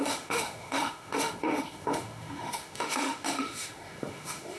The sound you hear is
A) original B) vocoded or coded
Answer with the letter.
B